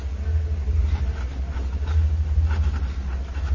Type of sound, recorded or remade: recorded